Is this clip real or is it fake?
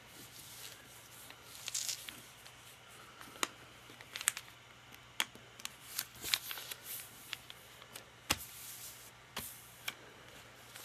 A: real